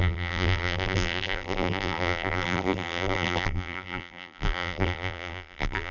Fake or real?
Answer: fake